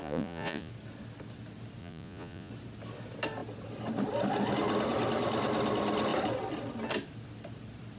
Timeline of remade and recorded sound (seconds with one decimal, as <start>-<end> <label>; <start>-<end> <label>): 0.0-0.7 remade; 0.7-1.8 recorded; 1.8-2.5 remade; 2.5-8.0 recorded